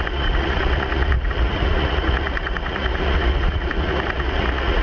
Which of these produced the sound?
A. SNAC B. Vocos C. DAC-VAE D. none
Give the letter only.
B